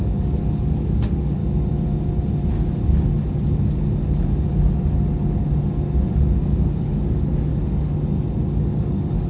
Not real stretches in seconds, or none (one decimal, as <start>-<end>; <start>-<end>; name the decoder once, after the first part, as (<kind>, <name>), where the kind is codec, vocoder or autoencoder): 0.0-1.4 (codec, DAC); 6.4-7.5; 8.4-9.3